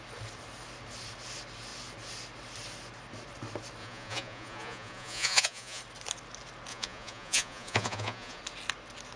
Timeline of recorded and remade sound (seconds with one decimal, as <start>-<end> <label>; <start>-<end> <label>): 0.0-3.8 recorded; 3.8-5.8 remade; 5.8-6.7 recorded; 6.7-8.4 remade; 8.4-9.2 recorded